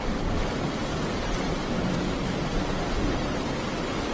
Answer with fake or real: real